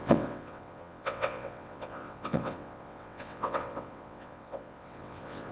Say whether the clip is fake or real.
fake